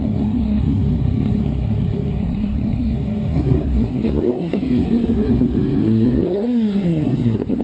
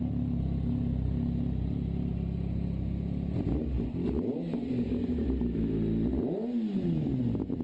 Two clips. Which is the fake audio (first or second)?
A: first